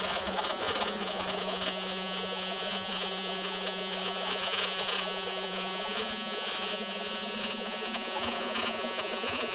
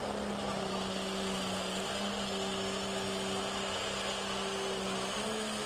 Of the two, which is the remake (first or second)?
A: first